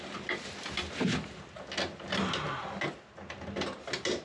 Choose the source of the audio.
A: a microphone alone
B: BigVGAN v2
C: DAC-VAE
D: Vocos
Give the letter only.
A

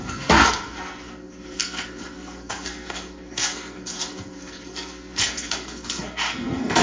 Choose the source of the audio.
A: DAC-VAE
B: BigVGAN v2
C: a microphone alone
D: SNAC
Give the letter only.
D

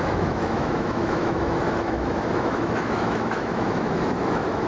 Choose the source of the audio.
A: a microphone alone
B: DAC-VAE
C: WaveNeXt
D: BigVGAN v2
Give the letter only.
B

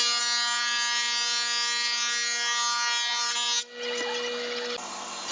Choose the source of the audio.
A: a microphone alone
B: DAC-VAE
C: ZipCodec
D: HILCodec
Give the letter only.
A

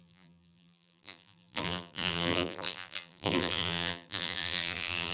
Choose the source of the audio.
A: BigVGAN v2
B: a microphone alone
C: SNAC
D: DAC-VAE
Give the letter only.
A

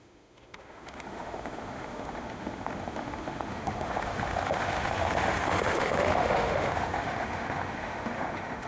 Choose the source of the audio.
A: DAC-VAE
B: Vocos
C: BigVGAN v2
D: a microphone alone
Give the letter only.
A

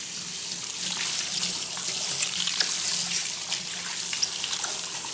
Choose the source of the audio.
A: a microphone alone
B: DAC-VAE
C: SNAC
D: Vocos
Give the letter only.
A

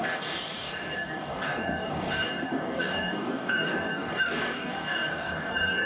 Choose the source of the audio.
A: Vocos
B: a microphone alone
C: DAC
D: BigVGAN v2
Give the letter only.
C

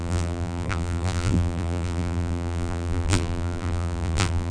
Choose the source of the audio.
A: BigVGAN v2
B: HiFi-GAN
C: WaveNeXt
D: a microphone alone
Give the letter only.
A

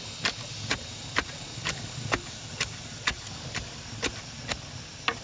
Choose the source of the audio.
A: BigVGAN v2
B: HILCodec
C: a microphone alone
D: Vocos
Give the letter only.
C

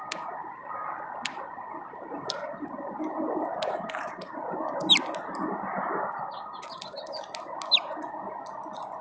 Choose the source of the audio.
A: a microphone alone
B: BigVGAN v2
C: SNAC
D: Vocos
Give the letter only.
A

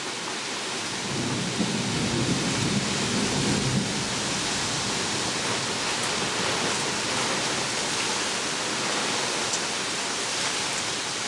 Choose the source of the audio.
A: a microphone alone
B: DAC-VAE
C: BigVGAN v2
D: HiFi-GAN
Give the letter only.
A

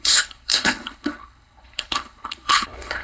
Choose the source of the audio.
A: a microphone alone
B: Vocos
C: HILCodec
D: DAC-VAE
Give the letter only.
C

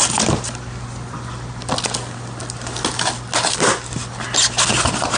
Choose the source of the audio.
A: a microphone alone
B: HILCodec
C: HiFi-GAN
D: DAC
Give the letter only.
A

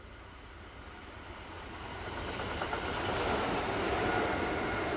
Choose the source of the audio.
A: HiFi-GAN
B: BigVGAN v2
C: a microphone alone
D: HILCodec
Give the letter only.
C